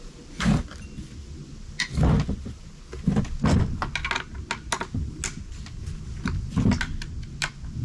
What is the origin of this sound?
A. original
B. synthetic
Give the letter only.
A